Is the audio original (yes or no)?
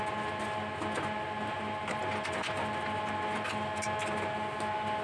yes